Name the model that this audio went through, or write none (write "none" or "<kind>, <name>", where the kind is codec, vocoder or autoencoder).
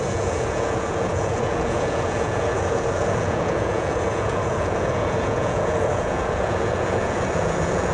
vocoder, Vocos